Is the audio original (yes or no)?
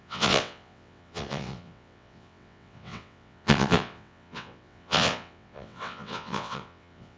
no